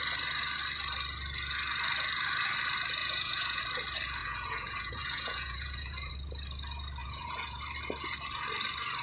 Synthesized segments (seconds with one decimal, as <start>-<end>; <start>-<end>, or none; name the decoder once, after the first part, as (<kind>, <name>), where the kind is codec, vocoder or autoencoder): 3.0-3.6 (vocoder, Vocos); 4.2-6.1; 7.0-7.6